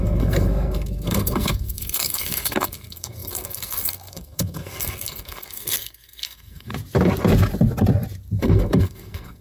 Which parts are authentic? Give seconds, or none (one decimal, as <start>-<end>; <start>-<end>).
6.7-8.4